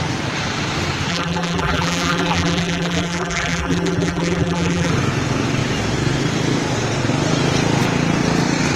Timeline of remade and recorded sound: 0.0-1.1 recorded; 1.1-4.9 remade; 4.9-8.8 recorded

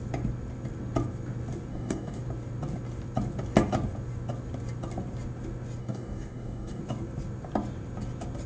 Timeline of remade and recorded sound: 0.0-1.7 recorded; 1.7-2.2 remade; 2.2-5.8 recorded; 5.8-6.8 remade; 6.8-8.5 recorded

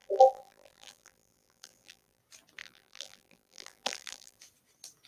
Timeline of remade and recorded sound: 0.0-2.2 remade; 2.2-2.6 recorded; 2.6-4.4 remade; 4.4-5.1 recorded

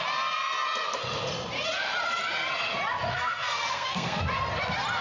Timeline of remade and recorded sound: 0.0-3.1 recorded; 3.1-4.2 remade; 4.2-5.0 recorded

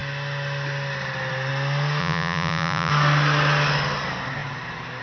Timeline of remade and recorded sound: 0.0-2.0 recorded; 2.0-2.9 remade; 2.9-5.0 recorded

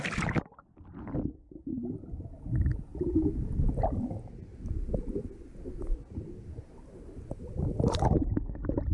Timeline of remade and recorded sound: 0.0-8.9 recorded

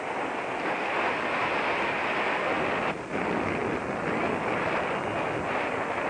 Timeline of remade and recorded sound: 0.0-6.1 recorded

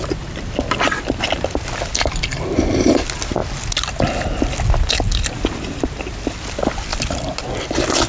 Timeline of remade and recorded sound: 0.0-3.4 remade; 3.4-6.3 recorded; 6.3-6.9 remade; 6.9-7.4 recorded; 7.4-8.1 remade